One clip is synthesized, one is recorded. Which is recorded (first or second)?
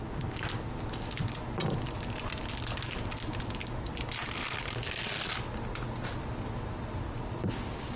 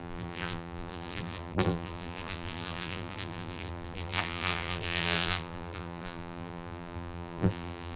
first